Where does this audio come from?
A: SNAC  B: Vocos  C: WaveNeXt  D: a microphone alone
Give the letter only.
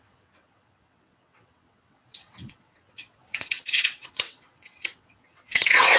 C